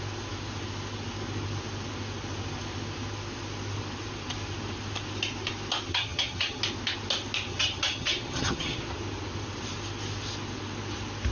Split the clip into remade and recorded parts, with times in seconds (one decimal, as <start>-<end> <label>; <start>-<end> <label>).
0.0-5.9 recorded; 5.9-6.6 remade; 6.6-7.5 recorded; 7.5-8.8 remade; 8.8-11.3 recorded